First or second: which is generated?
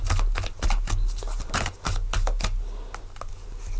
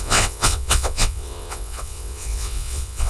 second